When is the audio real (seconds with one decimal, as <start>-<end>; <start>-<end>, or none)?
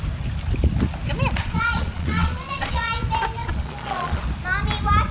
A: 0.0-1.4; 2.9-3.4; 4.2-5.1